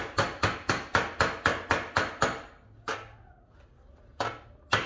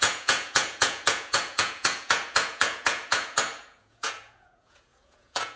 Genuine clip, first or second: first